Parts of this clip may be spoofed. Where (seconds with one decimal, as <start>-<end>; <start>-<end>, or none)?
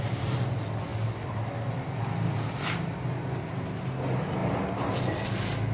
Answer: none